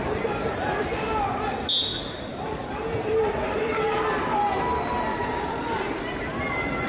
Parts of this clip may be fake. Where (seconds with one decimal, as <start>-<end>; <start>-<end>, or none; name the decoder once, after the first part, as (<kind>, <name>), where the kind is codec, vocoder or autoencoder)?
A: 1.9-3.2 (vocoder, BigVGAN v2); 5.1-6.2